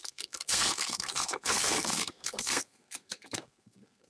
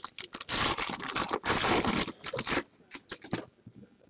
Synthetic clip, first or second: first